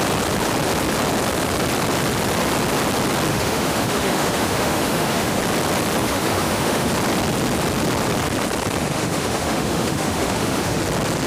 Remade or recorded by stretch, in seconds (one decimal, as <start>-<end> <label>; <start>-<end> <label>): 0.0-3.3 recorded; 3.3-5.4 remade; 5.4-6.0 recorded; 6.0-6.9 remade; 6.9-8.8 recorded; 8.8-10.8 remade; 10.8-11.3 recorded